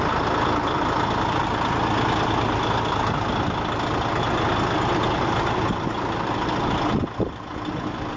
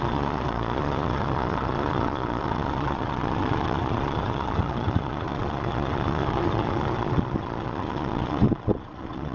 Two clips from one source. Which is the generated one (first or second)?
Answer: second